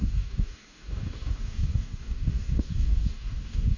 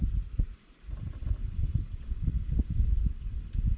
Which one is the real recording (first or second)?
second